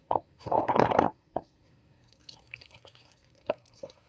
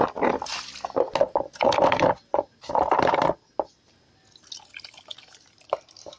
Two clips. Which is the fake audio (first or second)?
first